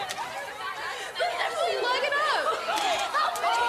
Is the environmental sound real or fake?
real